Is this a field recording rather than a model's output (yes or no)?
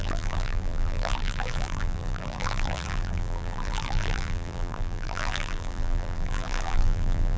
no